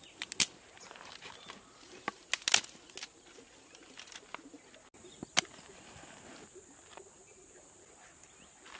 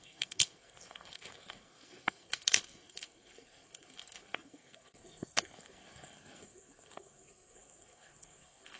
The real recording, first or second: first